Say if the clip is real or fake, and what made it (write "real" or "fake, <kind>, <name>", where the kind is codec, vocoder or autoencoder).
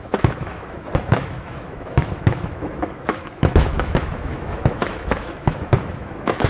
fake, autoencoder, DAC-VAE